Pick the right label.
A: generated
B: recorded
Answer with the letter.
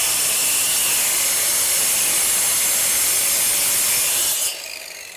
B